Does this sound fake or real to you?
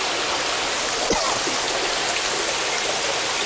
real